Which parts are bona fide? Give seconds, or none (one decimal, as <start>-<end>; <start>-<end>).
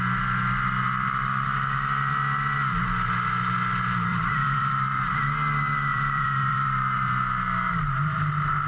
0.0-4.1; 5.2-5.9; 8.2-8.7